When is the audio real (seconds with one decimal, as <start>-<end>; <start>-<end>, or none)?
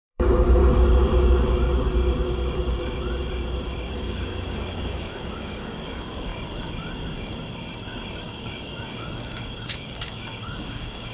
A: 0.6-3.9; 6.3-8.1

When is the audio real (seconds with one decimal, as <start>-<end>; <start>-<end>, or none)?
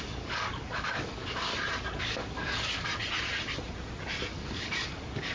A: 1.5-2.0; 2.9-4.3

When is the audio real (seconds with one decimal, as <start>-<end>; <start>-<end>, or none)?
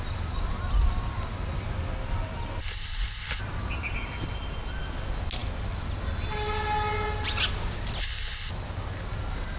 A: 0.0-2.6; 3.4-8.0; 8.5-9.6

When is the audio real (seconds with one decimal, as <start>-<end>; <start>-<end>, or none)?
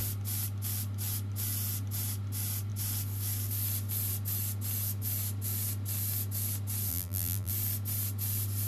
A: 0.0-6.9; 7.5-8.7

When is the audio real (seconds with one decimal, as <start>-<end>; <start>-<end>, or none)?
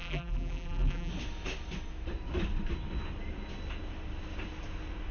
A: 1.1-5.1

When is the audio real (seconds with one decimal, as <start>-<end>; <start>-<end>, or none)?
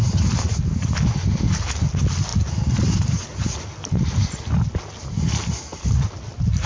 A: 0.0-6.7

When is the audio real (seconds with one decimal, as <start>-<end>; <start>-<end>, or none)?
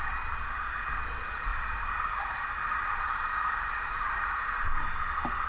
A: 0.0-1.5; 4.8-5.5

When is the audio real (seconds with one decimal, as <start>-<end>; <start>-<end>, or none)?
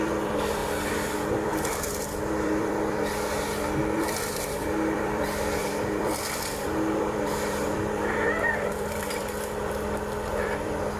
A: 0.6-1.3